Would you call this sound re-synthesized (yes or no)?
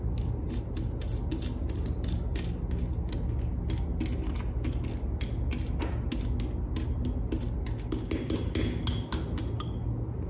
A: no